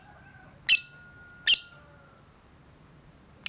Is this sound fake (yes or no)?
no